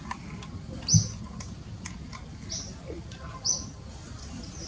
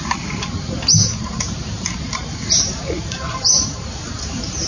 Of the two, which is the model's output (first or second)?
second